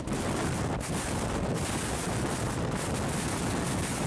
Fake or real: real